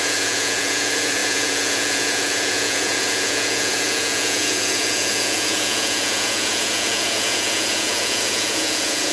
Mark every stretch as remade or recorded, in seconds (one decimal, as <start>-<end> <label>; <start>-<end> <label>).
0.0-9.1 remade